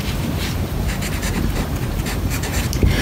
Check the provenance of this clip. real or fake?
fake